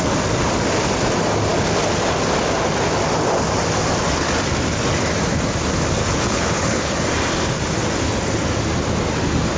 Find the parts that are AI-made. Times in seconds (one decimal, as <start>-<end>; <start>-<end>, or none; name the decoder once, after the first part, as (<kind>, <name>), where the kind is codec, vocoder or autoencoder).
6.0-6.9 (codec, HILCodec)